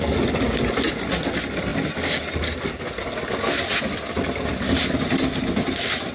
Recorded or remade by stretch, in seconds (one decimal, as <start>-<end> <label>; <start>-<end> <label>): 0.0-6.1 recorded